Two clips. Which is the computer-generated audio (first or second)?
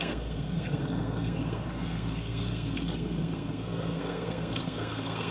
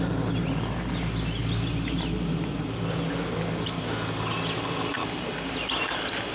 first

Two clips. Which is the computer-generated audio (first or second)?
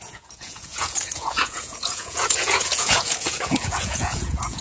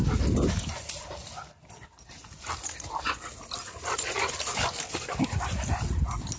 first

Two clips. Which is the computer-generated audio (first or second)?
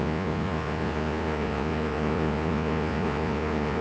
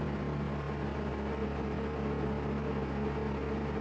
first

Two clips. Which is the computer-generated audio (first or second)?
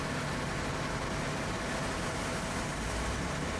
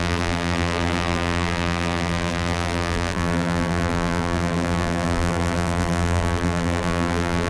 second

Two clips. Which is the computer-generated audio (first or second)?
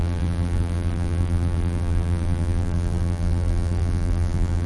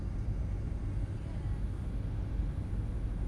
first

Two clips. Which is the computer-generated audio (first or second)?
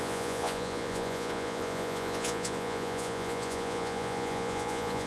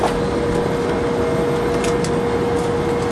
first